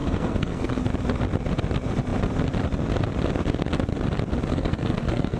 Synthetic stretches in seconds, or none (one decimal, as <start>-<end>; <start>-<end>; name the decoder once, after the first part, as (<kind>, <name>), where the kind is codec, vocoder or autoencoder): 0.0-0.8 (codec, SNAC); 4.5-5.4